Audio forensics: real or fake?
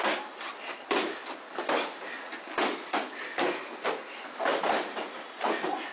real